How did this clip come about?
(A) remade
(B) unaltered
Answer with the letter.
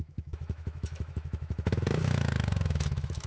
A